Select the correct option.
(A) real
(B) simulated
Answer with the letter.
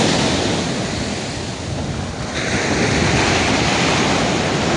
A